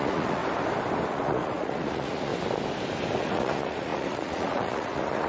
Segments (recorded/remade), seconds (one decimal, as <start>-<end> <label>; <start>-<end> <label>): 0.0-0.4 remade; 0.4-1.1 recorded; 1.1-2.3 remade; 2.3-3.2 recorded; 3.2-5.3 remade